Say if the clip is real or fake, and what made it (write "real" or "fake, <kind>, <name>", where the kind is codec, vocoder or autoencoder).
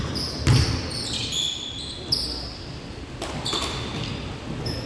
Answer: real